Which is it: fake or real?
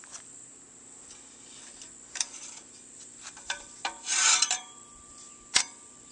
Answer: fake